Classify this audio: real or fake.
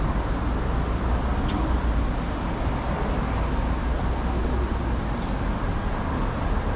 real